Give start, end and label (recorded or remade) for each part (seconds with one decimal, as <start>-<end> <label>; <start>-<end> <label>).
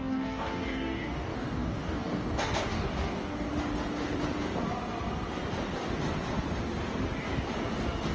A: 0.0-3.5 remade; 3.5-8.1 recorded